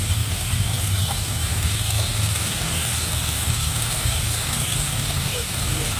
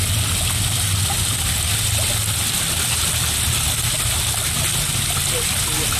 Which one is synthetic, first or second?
first